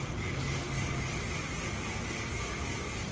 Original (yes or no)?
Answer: yes